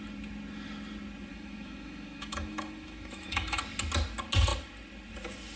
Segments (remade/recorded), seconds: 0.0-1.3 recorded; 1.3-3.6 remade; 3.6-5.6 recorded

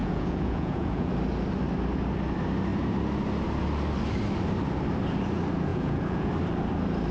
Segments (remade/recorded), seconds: 0.0-1.1 remade; 1.1-5.7 recorded; 5.7-6.3 remade; 6.3-7.1 recorded

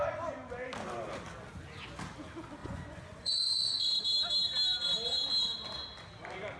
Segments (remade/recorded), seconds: 0.0-2.6 recorded; 2.6-4.0 remade; 4.0-6.6 recorded

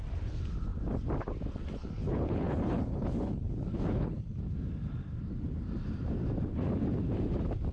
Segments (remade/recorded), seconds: 0.0-1.8 recorded; 1.8-4.4 remade; 4.4-7.7 recorded

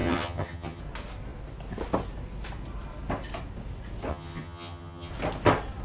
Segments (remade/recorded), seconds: 0.0-0.8 remade; 0.8-4.1 recorded; 4.1-5.1 remade; 5.1-5.8 recorded

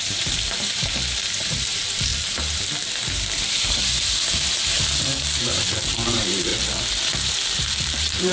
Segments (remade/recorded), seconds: 0.0-6.5 remade; 6.5-7.5 recorded; 7.5-8.3 remade